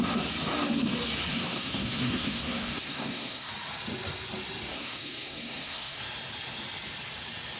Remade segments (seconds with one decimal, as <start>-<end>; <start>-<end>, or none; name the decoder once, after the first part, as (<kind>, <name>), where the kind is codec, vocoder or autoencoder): 1.3-3.5 (codec, SNAC); 4.7-6.0